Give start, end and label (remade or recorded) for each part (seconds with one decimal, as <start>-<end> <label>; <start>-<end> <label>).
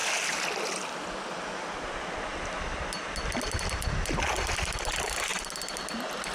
0.0-0.6 remade; 0.6-2.3 recorded; 2.3-3.2 remade; 3.2-6.3 recorded